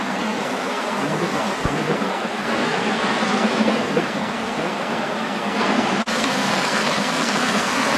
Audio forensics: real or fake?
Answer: fake